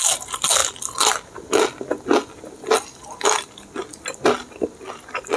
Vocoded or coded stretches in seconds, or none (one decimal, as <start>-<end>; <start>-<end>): 2.2-3.0